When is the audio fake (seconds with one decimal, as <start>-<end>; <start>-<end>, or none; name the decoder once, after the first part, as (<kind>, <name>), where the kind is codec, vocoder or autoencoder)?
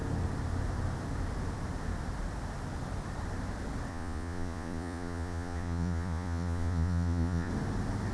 3.9-7.5 (vocoder, Vocos)